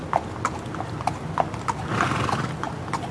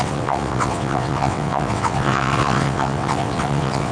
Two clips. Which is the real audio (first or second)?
first